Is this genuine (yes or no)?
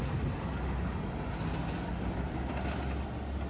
yes